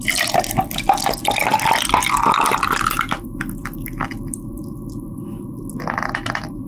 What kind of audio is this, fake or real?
real